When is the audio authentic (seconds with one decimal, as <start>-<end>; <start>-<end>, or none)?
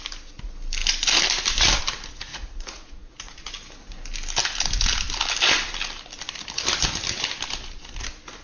0.0-2.3; 3.5-8.4